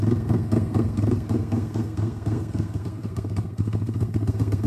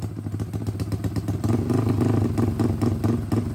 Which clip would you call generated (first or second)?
first